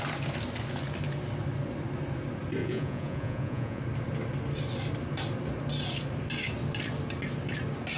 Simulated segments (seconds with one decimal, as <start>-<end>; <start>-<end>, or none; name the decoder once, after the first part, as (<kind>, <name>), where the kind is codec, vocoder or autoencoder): 2.6-3.8 (vocoder, Vocos)